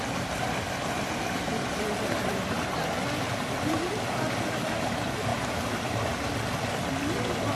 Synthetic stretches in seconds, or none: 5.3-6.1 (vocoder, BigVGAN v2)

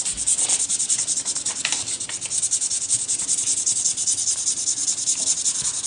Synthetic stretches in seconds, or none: none